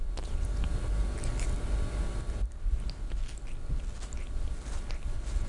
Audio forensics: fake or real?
real